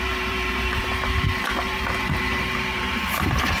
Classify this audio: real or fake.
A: fake